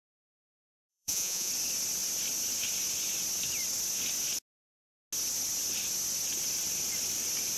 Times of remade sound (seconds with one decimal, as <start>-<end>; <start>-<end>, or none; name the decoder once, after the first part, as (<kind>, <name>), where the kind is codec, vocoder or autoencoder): 0.9-1.5 (vocoder, Vocos)